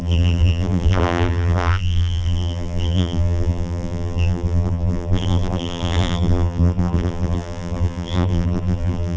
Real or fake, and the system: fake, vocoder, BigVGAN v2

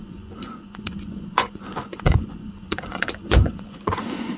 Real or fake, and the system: fake, vocoder, Vocos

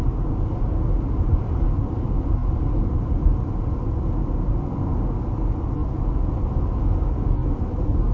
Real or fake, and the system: real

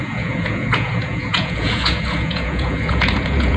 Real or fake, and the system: fake, vocoder, Vocos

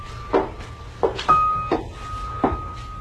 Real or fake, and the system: real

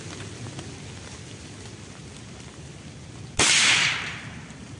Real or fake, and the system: real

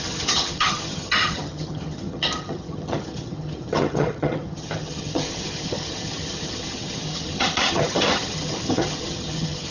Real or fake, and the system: fake, vocoder, HiFi-GAN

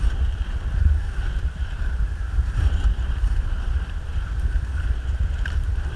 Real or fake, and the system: fake, vocoder, BigVGAN v2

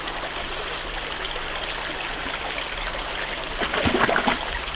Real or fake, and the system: real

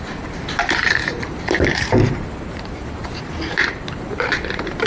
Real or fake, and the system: fake, vocoder, BigVGAN v2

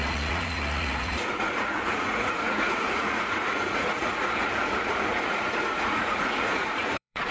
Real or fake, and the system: fake, vocoder, Vocos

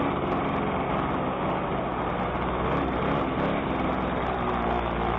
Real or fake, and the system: real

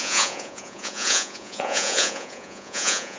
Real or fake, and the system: fake, vocoder, Vocos